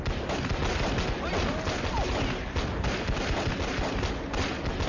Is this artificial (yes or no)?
no